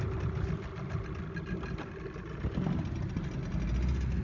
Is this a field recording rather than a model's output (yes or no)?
yes